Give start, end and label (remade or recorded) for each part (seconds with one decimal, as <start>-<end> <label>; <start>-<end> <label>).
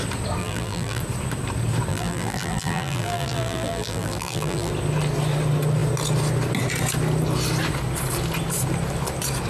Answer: 0.0-0.4 recorded; 0.4-1.0 remade; 1.0-1.9 recorded; 1.9-4.7 remade; 4.7-9.5 recorded